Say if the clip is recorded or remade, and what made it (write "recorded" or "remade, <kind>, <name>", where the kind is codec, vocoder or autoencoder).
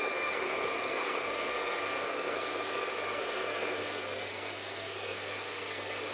remade, codec, SNAC